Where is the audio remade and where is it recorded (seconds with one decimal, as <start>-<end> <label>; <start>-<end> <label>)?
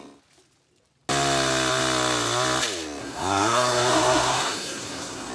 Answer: 0.0-3.0 recorded; 3.0-5.3 remade